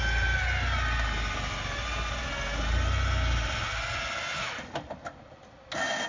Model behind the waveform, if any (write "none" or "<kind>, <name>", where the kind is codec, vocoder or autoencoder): none